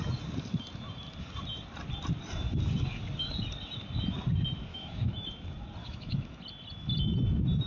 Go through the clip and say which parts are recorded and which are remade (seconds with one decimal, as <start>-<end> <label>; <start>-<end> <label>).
0.0-4.7 recorded; 4.7-5.3 remade; 5.3-5.8 recorded; 5.8-6.4 remade; 6.4-7.7 recorded